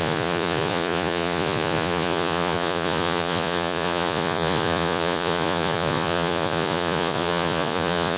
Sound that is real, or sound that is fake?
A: fake